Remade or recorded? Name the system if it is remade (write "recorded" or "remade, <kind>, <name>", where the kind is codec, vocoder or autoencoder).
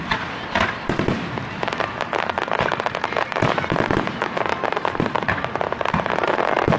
remade, vocoder, BigVGAN v2